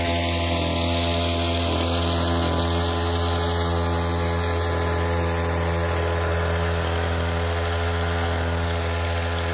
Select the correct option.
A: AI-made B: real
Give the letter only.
B